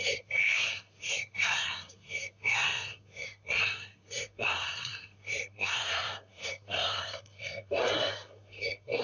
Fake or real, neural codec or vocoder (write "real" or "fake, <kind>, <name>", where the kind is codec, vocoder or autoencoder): fake, codec, SNAC